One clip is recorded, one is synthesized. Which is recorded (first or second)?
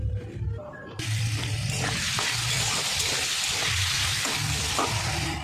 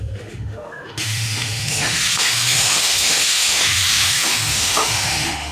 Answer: first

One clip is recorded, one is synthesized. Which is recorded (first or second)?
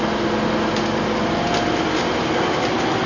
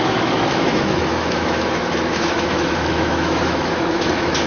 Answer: first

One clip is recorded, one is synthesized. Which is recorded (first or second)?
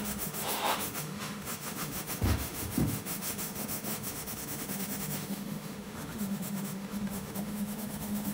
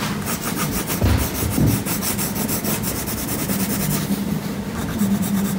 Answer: second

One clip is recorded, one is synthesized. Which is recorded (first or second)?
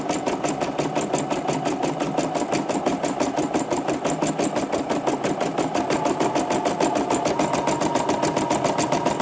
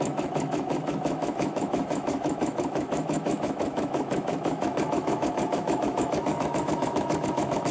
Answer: first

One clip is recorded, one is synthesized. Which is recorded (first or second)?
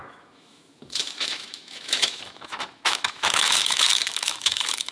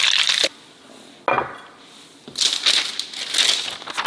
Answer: second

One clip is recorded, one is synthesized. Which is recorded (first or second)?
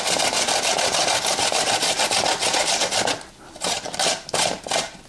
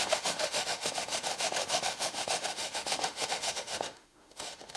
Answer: first